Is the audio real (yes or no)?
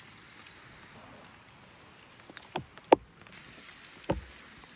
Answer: yes